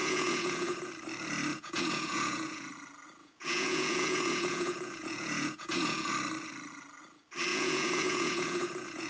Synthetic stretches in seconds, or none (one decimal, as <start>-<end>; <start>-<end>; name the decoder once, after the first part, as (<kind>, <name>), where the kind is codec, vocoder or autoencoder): 0.0-0.9 (vocoder, Vocos); 1.5-2.7; 3.2-6.1; 7.5-9.1